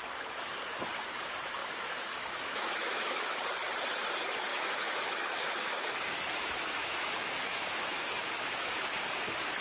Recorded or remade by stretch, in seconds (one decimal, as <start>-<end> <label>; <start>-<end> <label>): 0.0-1.6 recorded; 1.6-3.4 remade; 3.4-4.5 recorded; 4.5-8.8 remade; 8.8-9.6 recorded